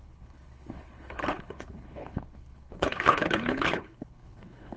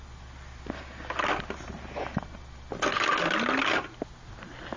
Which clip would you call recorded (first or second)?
second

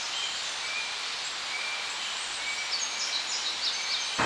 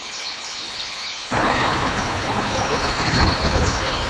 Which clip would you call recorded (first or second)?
first